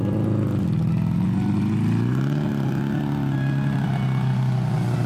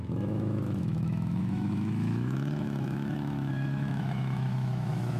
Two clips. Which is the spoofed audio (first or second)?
second